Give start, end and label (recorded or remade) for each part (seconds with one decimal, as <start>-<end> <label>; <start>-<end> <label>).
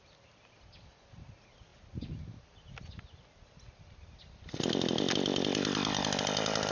0.0-6.7 recorded